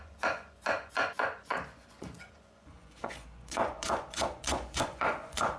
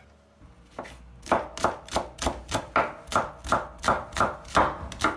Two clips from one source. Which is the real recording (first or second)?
second